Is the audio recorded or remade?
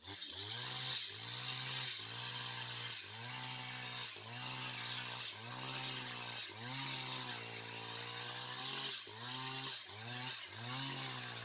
recorded